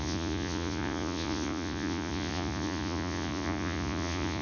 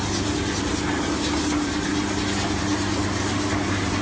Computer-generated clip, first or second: first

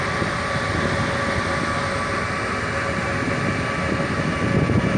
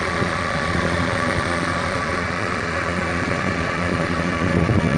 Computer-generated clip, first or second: second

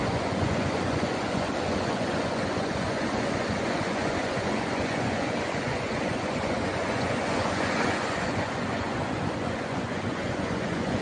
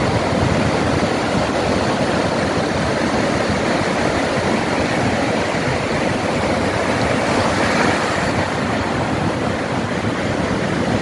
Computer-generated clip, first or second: first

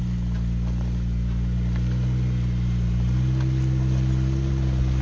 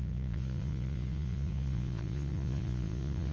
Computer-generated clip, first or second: second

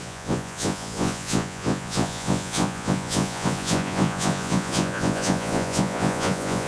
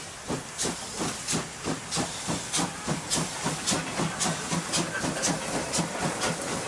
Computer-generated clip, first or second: first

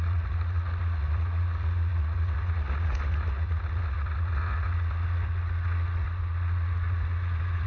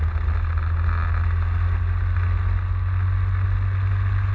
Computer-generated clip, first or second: first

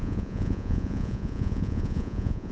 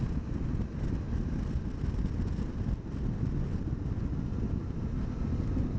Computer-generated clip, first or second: first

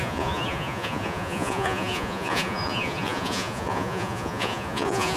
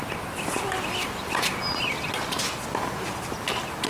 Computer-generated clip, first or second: first